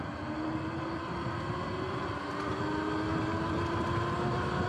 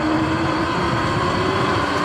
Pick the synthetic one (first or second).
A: second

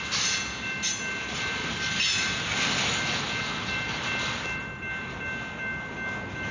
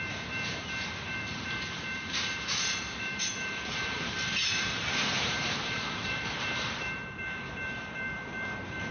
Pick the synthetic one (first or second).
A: second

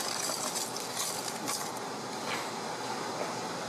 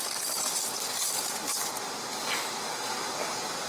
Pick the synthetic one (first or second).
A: first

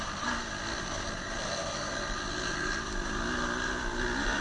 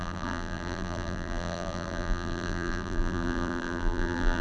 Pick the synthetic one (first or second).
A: second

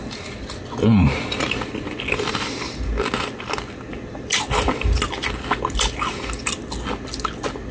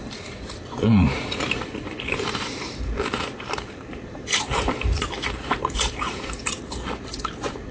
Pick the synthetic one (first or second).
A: second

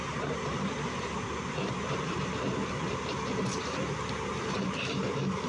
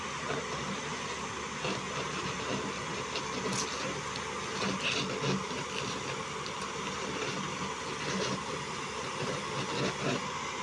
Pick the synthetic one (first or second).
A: first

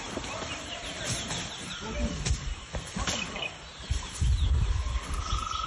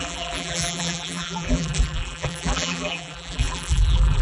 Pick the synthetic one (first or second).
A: second